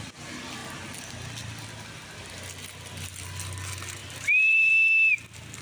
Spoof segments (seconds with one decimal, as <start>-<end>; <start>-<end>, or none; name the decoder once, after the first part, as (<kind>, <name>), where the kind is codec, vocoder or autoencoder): 4.0-4.7 (vocoder, BigVGAN v2)